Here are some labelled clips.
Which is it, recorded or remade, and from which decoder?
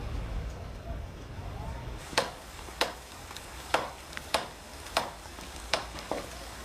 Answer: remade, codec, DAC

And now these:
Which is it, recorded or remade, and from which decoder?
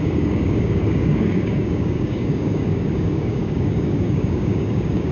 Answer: remade, codec, DAC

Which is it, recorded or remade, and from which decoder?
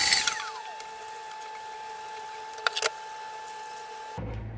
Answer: recorded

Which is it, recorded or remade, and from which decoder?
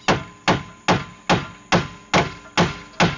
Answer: recorded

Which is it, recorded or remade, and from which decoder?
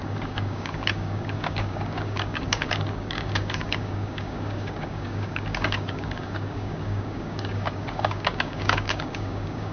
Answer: remade, codec, DAC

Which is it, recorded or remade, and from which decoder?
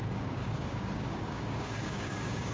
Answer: remade, codec, DAC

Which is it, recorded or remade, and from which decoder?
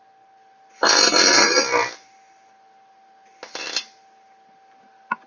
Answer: recorded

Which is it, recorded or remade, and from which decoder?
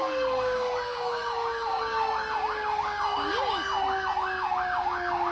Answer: remade, codec, DAC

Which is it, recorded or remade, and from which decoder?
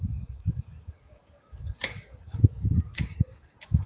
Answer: remade, codec, DAC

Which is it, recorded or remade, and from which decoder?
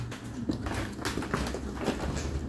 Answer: recorded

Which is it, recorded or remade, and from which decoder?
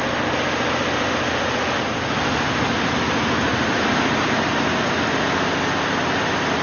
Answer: recorded